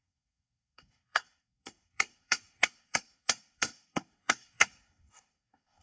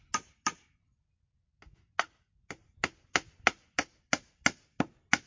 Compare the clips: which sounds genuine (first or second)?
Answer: second